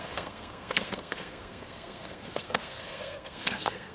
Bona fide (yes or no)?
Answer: no